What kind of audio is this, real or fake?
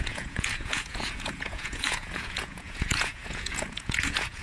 fake